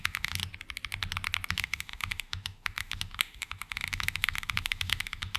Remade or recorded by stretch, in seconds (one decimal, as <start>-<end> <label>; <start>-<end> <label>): 0.0-0.4 remade; 0.4-1.5 recorded; 1.5-5.4 remade